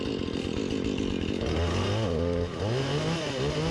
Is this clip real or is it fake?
real